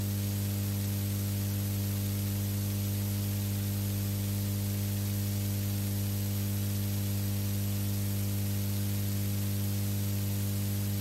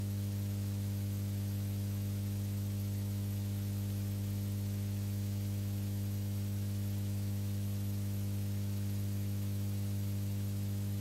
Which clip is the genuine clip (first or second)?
first